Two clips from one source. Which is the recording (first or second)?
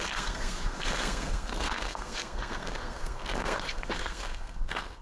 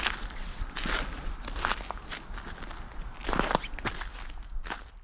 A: second